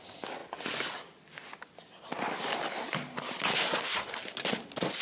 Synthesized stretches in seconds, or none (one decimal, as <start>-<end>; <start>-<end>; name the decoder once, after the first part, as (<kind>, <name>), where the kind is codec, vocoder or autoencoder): none